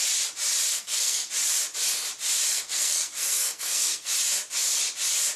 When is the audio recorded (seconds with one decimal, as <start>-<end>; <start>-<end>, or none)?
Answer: 0.0-0.7; 1.3-2.5; 4.1-5.4